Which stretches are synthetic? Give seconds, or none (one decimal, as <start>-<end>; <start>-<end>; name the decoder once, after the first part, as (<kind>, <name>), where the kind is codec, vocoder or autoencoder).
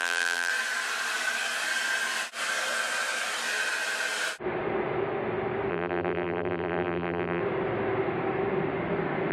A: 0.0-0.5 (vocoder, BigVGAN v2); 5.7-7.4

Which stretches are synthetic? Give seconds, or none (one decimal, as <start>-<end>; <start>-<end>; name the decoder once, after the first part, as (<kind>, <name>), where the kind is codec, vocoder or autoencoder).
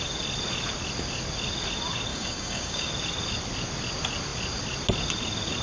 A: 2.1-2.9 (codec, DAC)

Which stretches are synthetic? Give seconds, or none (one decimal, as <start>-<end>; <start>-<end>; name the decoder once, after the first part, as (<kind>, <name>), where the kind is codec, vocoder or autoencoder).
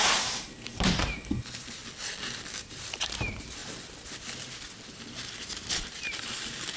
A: 0.0-1.8 (vocoder, BigVGAN v2); 2.5-3.6; 5.7-6.8